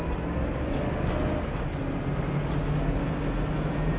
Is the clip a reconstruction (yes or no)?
no